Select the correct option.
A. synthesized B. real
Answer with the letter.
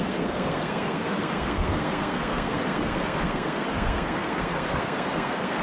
A